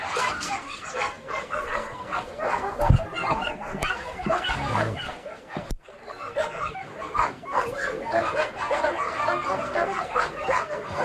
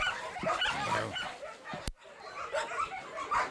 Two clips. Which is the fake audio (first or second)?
first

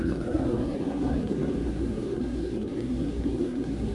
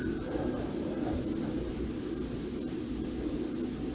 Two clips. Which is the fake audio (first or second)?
first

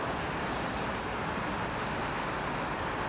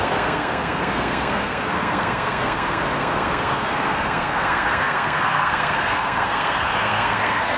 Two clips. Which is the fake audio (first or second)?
second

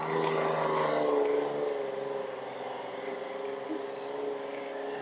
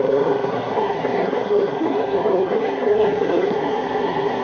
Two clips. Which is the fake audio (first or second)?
second